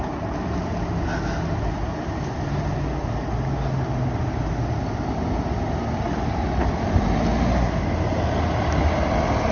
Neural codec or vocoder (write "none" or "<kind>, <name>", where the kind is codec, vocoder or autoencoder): none